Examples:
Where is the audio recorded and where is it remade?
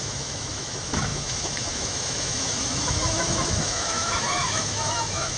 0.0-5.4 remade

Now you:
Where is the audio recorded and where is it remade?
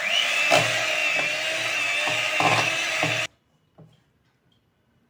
0.0-5.1 recorded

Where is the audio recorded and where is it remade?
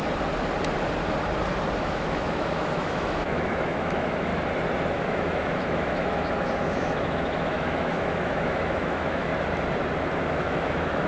0.0-1.8 recorded; 1.8-4.3 remade; 4.3-4.9 recorded; 4.9-9.3 remade; 9.3-10.2 recorded; 10.2-11.1 remade